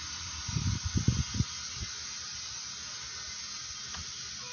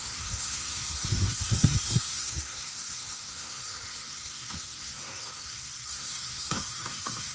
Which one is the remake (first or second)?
second